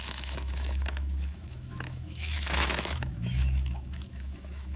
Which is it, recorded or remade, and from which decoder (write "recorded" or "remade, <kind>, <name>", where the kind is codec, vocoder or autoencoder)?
remade, autoencoder, DAC-VAE